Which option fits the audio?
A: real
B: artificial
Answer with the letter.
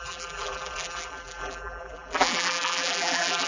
B